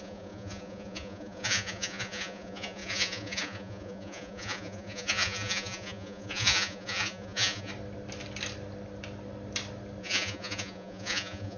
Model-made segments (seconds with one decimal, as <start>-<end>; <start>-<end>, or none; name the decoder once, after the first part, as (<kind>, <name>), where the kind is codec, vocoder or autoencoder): 0.0-7.7 (vocoder, Vocos); 10.0-11.6